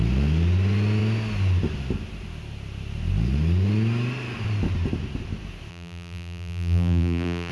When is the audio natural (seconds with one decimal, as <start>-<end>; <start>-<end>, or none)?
0.0-5.7